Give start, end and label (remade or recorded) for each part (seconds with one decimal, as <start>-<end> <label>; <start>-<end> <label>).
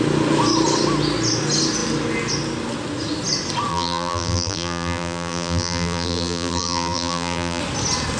0.0-3.7 recorded; 3.7-7.6 remade; 7.6-8.2 recorded